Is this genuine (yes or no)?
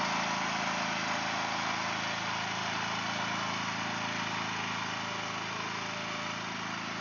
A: yes